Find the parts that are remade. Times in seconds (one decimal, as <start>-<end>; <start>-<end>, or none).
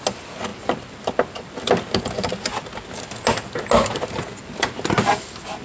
none